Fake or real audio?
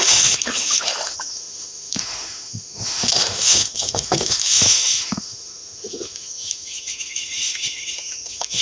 fake